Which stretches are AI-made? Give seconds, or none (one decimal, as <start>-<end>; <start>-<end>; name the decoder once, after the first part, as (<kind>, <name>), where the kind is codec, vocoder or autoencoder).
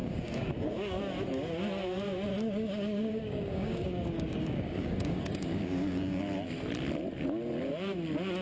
0.0-1.0 (codec, DAC); 2.3-6.2